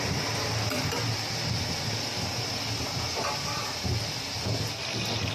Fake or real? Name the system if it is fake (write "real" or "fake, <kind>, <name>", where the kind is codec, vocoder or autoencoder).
real